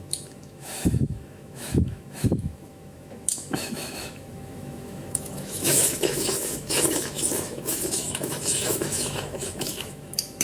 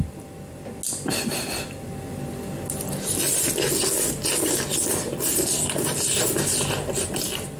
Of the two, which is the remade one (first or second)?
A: first